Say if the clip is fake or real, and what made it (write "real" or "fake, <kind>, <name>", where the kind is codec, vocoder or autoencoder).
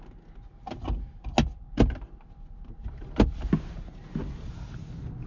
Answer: real